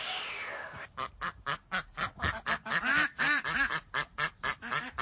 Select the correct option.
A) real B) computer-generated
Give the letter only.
B